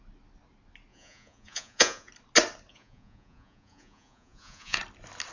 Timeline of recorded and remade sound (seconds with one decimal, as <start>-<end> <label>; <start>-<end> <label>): 0.0-0.9 recorded; 0.9-2.1 remade; 2.1-2.7 recorded; 2.7-4.8 remade; 4.8-5.3 recorded

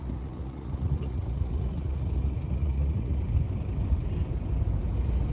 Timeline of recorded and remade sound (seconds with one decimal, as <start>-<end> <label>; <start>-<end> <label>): 0.0-3.2 remade; 3.2-5.3 recorded

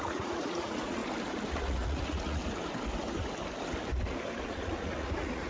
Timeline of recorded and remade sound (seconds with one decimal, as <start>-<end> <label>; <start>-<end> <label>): 0.0-1.0 remade; 1.0-1.5 recorded; 1.5-2.4 remade; 2.4-4.4 recorded; 4.4-5.5 remade

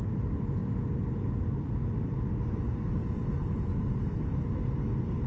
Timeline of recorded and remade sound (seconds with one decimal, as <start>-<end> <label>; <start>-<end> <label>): 0.0-5.3 recorded

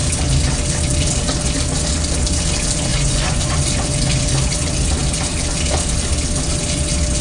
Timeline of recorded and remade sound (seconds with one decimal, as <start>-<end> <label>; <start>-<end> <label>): 0.0-2.9 recorded; 2.9-3.5 remade; 3.5-7.2 recorded

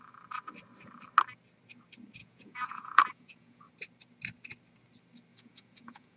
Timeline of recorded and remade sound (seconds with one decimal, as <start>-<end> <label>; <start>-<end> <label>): 0.0-2.2 recorded; 2.2-3.7 remade; 3.7-5.3 recorded; 5.3-6.2 remade